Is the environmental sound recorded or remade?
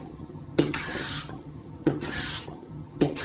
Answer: remade